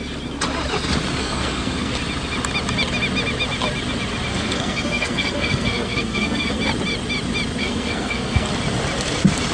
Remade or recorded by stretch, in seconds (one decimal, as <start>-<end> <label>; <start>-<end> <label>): 0.0-1.2 recorded; 1.2-1.9 remade; 1.9-4.3 recorded; 4.3-6.6 remade; 6.6-7.6 recorded; 7.6-8.5 remade; 8.5-9.5 recorded